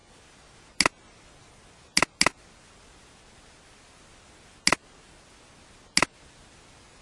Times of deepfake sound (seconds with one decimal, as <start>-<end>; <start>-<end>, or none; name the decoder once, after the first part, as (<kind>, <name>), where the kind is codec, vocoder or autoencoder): none